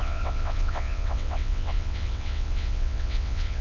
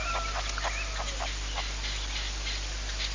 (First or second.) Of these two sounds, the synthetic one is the first